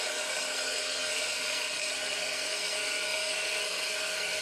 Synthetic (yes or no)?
yes